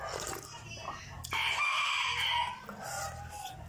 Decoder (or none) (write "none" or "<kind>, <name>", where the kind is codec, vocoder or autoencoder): none